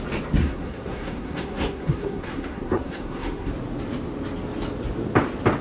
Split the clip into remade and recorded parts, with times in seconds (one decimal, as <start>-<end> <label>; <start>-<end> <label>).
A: 0.0-0.4 recorded; 0.4-3.5 remade; 3.5-5.6 recorded